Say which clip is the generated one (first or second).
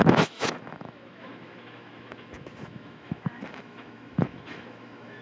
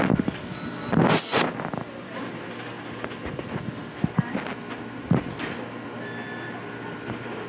first